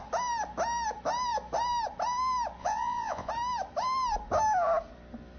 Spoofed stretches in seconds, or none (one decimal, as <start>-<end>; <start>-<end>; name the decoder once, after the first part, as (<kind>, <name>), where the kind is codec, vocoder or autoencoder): 2.6-3.3 (vocoder, Vocos)